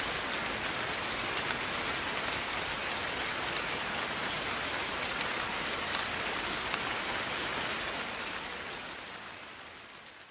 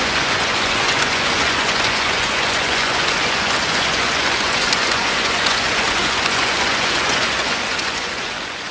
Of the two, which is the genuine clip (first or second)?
first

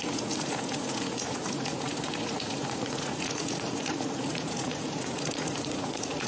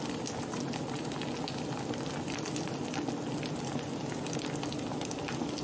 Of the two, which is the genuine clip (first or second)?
second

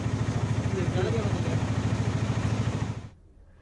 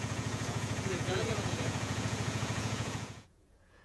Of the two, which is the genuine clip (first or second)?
first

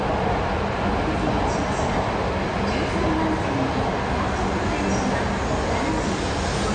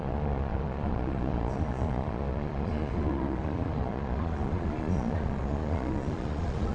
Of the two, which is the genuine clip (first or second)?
first